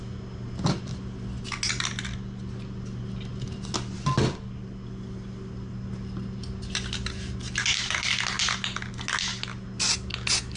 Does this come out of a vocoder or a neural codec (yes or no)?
no